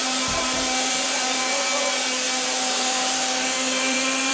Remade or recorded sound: remade